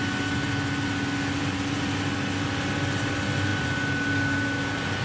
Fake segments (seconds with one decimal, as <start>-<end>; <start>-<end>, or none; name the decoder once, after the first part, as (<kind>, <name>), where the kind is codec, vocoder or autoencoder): none